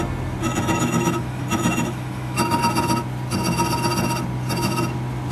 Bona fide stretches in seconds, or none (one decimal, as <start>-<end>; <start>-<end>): 0.0-0.4; 2.6-5.3